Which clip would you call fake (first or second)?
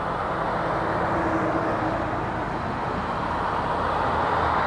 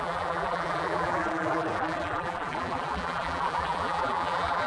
second